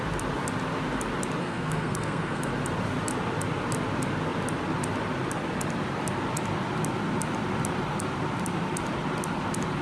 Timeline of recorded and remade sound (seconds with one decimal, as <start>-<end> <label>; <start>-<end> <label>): 0.0-1.4 recorded; 1.4-2.5 remade; 2.5-9.8 recorded